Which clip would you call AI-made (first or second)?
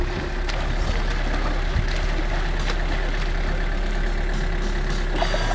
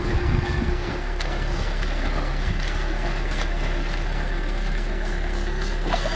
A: second